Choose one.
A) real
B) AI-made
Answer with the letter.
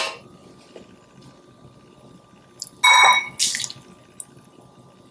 A